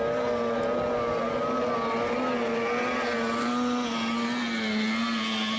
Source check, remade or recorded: recorded